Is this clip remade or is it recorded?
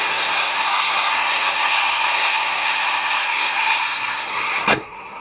remade